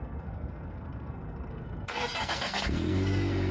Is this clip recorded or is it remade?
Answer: remade